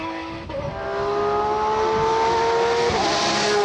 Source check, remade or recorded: recorded